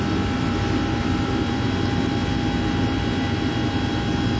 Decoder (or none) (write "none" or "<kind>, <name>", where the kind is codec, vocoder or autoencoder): none